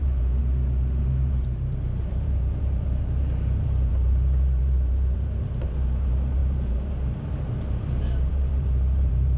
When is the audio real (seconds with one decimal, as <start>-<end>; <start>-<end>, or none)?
0.4-1.0